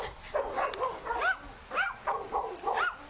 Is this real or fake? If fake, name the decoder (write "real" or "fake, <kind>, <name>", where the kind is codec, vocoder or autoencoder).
real